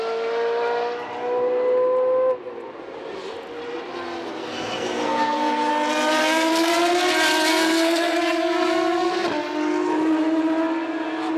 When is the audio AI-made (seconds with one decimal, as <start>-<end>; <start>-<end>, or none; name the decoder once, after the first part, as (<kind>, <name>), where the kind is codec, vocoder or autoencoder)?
4.4-5.7 (codec, SNAC); 6.2-6.7; 7.5-9.1